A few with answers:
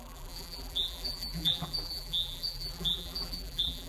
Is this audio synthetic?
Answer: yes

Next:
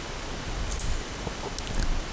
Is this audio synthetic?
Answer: no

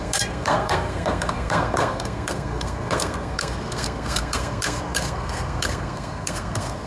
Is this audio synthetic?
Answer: yes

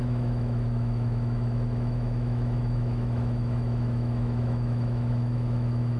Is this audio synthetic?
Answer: yes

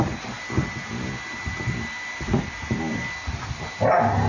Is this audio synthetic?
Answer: no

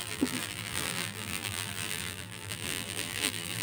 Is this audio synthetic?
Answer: yes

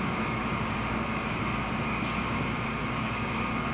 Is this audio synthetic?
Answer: yes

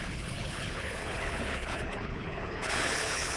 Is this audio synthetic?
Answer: yes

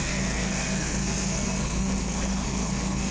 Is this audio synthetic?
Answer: yes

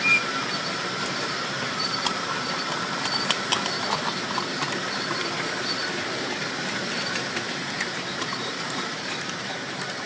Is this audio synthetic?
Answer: yes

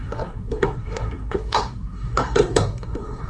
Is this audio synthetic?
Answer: yes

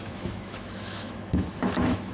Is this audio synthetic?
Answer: yes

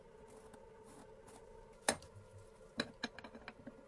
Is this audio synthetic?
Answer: no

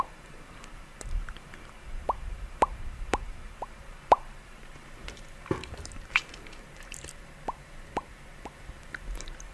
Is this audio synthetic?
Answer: yes